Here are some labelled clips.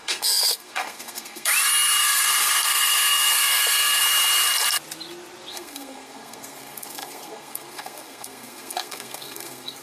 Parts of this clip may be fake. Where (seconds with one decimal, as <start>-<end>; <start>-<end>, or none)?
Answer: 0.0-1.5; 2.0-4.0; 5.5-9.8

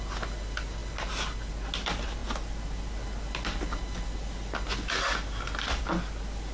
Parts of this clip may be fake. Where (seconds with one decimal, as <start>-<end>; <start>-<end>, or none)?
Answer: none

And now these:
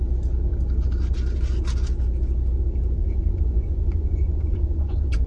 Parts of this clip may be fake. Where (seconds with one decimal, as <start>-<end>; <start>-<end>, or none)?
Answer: 3.0-5.3